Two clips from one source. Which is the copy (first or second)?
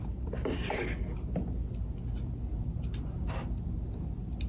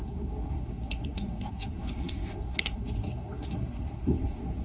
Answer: second